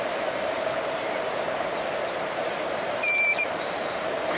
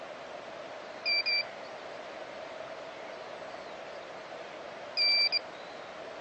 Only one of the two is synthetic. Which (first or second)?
first